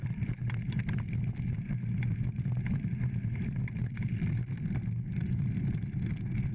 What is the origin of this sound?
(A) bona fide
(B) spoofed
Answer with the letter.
B